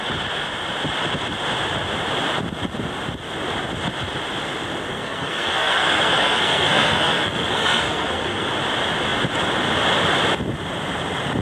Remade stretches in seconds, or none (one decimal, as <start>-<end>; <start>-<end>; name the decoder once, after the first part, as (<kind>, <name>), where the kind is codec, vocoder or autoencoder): 4.9-8.5 (codec, SNAC)